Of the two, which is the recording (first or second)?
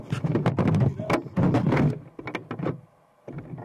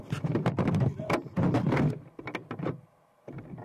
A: first